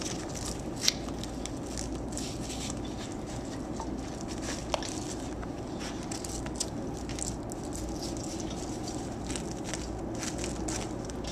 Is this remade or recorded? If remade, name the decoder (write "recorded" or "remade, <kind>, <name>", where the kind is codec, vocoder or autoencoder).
recorded